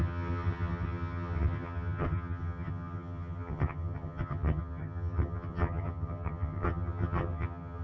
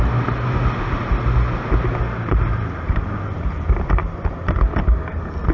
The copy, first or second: first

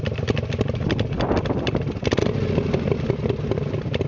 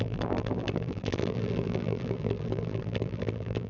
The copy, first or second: second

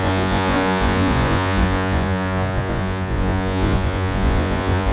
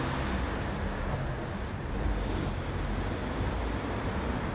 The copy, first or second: first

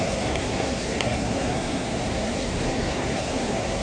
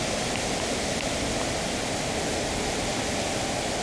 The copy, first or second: first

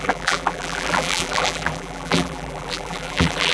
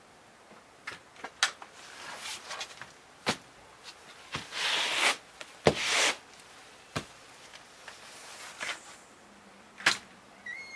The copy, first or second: first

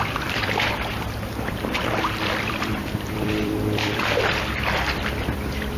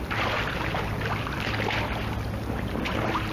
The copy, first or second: first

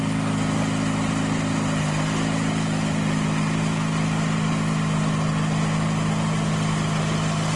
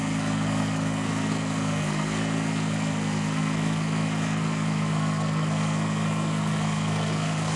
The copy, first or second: second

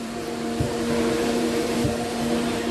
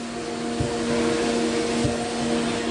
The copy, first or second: first